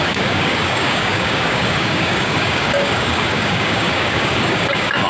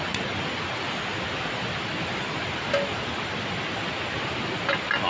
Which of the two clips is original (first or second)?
second